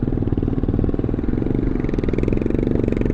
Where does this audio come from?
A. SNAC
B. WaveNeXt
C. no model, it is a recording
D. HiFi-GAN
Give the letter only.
C